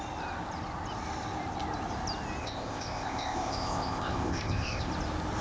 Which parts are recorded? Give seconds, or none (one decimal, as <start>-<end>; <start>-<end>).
0.0-2.4; 4.9-5.4